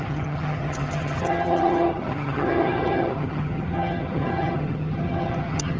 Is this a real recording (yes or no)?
no